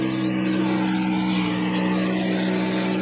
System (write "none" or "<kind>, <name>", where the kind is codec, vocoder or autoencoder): none